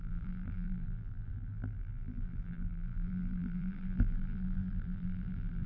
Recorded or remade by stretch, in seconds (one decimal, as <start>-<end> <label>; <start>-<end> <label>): 0.0-5.7 remade